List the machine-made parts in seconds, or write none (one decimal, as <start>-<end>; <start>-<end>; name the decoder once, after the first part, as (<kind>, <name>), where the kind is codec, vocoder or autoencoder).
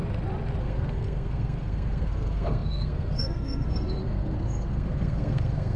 0.6-5.8 (codec, SNAC)